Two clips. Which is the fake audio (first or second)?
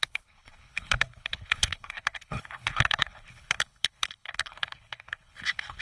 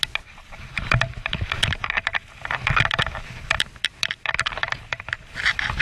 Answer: first